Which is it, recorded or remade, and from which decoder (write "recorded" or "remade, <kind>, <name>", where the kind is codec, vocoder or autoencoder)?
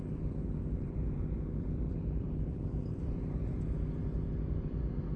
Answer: remade, vocoder, BigVGAN v2